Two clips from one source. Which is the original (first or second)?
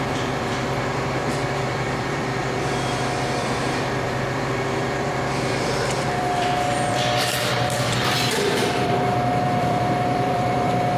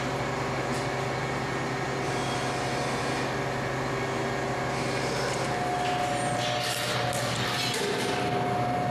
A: second